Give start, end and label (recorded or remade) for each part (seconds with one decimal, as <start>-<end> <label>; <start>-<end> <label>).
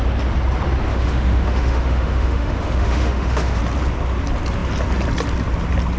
0.0-0.9 recorded; 0.9-3.6 remade; 3.6-6.0 recorded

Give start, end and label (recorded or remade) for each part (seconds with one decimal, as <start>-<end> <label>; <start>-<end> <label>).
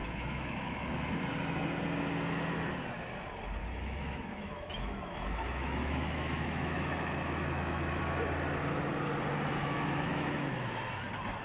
0.0-1.2 remade; 1.2-3.6 recorded; 3.6-8.0 remade; 8.0-9.6 recorded; 9.6-10.8 remade; 10.8-11.4 recorded